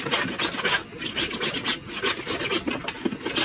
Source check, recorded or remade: recorded